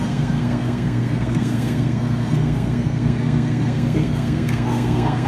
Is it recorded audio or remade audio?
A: remade